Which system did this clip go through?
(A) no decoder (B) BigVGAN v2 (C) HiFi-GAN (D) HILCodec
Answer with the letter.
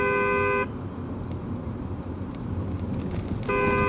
A